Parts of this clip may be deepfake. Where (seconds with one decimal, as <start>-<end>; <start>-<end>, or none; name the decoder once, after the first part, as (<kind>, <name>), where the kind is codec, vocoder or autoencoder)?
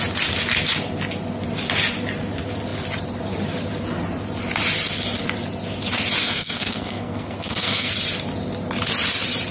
6.2-7.9 (codec, SNAC)